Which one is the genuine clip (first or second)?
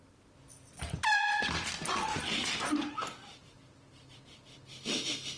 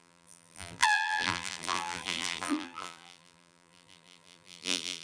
first